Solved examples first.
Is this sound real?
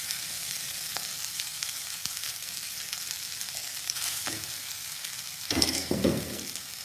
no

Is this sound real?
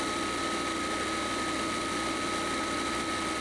yes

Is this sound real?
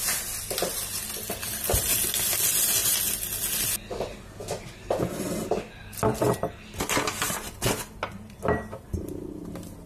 yes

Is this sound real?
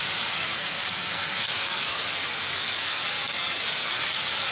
no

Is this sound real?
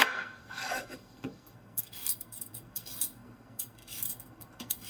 no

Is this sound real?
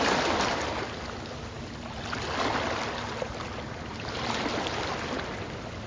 yes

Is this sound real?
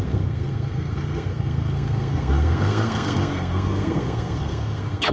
no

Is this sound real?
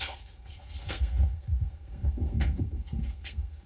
no